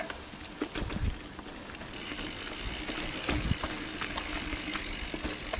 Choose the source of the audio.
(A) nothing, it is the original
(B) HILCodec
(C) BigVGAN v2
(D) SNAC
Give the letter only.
A